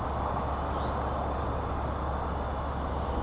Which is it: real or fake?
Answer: real